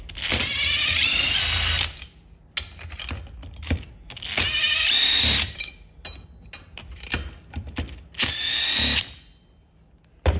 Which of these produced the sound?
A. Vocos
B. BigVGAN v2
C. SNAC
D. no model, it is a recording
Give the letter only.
D